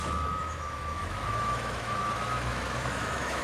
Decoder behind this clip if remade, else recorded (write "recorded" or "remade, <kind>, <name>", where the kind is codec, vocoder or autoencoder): remade, autoencoder, DAC-VAE